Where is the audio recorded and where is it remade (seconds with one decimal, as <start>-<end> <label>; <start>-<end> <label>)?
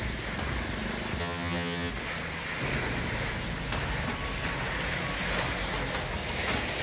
0.0-1.2 recorded; 1.2-1.9 remade; 1.9-6.8 recorded